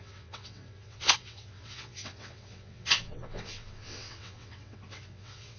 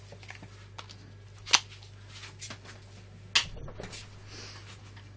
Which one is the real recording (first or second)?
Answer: second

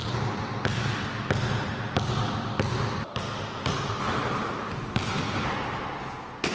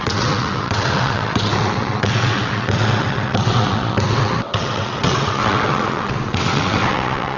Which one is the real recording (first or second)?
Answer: first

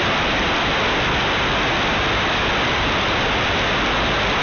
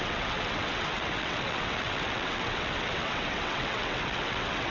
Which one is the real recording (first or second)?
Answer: first